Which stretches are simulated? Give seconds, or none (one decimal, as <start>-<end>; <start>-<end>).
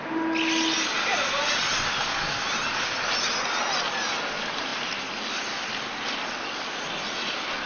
none